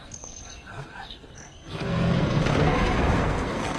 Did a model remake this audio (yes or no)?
yes